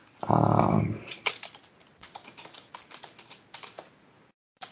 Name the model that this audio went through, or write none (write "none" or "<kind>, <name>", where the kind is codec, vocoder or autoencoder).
none